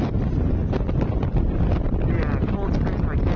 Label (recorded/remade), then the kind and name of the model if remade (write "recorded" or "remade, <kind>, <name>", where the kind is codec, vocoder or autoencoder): recorded